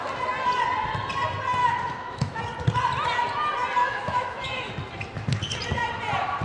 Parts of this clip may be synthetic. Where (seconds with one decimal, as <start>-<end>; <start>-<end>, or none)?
1.6-2.4; 3.8-4.7

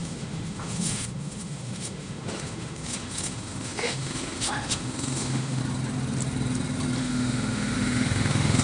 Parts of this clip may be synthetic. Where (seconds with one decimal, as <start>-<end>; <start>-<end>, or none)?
0.0-5.6; 7.0-8.6